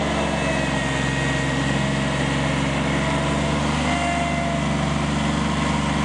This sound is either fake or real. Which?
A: real